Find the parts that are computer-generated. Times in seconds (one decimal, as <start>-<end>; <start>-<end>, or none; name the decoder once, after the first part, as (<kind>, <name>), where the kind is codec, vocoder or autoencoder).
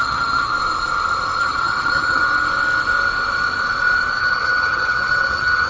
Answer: 0.0-0.5 (vocoder, HiFi-GAN); 1.4-2.2; 4.2-5.7